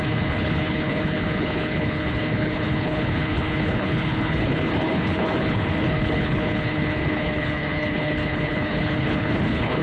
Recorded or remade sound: remade